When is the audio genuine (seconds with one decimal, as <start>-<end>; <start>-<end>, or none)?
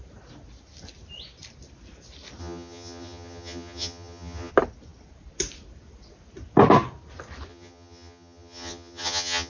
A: 0.0-2.4; 4.5-7.5